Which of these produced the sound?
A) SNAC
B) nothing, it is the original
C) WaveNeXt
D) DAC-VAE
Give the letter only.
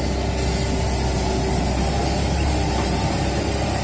B